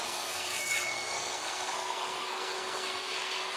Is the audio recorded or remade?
remade